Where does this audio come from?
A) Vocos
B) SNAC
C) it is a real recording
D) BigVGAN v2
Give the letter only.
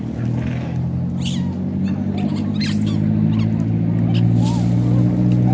C